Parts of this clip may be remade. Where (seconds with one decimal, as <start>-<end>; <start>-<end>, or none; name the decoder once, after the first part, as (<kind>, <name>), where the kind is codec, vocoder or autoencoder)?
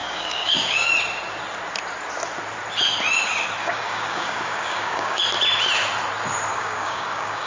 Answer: 0.0-0.9 (codec, DAC); 3.6-5.2; 6.5-7.5